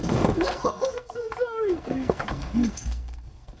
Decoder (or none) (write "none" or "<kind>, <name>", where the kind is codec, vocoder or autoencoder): codec, SNAC